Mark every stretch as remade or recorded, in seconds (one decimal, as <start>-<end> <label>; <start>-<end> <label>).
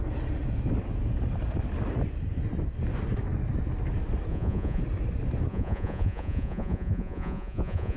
0.0-4.3 recorded; 4.3-4.8 remade; 4.8-5.5 recorded; 5.5-8.0 remade